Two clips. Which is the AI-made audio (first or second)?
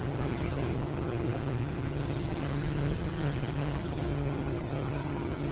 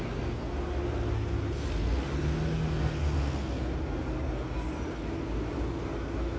first